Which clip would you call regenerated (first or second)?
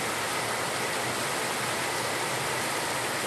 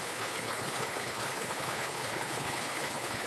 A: second